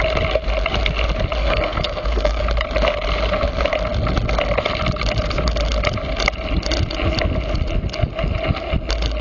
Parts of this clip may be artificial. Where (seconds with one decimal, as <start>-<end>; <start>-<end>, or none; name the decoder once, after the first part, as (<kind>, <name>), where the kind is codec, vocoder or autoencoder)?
1.4-2.4 (codec, SNAC)